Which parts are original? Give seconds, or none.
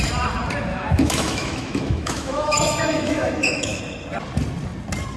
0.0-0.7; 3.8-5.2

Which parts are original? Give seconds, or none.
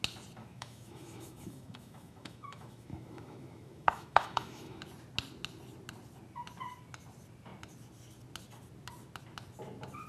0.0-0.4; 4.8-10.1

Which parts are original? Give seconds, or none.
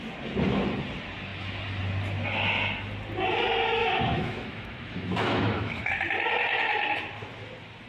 0.0-3.8; 5.9-7.9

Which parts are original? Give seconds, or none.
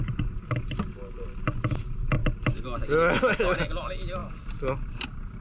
0.0-5.4